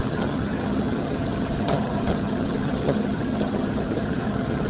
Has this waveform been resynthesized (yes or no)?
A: yes